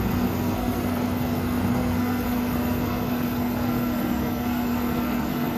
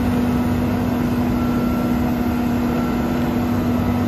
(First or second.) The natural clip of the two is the second